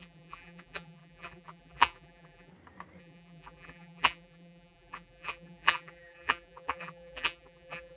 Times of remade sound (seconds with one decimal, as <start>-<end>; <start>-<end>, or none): 0.0-2.5; 3.0-8.0